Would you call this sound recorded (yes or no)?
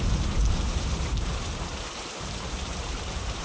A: no